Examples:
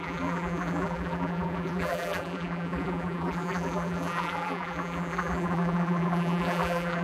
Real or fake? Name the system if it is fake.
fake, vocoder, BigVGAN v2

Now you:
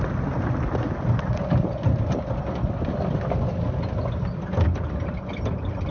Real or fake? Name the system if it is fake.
real